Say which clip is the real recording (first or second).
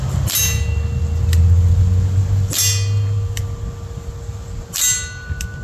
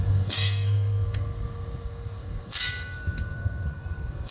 first